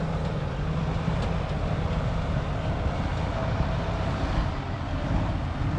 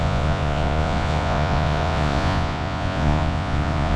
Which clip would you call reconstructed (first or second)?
second